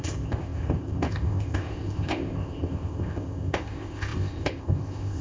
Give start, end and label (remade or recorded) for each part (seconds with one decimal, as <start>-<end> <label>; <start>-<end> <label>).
0.0-5.2 remade